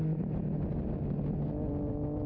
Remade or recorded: recorded